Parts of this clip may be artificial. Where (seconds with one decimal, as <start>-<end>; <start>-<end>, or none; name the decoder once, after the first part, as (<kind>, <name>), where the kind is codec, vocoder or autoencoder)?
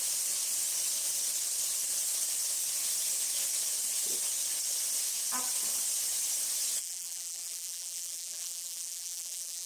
6.8-9.7 (vocoder, BigVGAN v2)